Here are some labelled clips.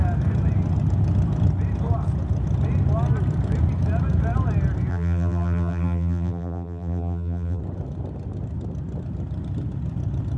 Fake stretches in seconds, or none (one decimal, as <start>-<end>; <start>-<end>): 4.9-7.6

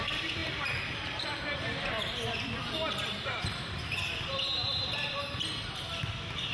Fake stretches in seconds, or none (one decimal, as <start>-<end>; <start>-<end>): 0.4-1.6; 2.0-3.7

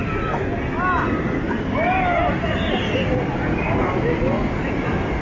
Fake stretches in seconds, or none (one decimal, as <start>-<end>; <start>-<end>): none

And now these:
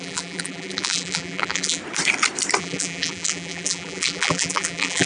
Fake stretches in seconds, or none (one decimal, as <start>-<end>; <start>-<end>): 0.0-1.8; 2.6-5.1

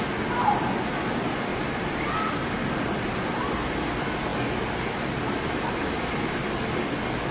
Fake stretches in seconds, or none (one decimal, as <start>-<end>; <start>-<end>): 1.5-2.0

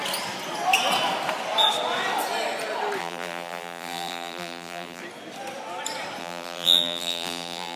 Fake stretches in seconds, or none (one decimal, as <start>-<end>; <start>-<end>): 3.0-5.0; 6.2-7.8

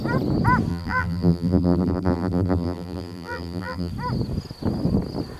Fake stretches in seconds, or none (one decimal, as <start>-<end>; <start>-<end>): 0.7-3.9

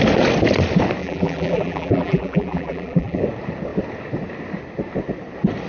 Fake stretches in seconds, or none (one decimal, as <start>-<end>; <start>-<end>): 1.0-3.2